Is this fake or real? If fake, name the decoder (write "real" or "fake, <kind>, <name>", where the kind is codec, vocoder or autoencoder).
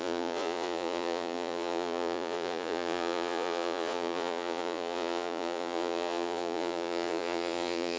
fake, vocoder, Vocos